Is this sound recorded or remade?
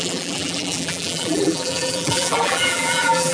remade